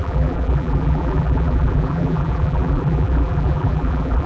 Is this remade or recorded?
remade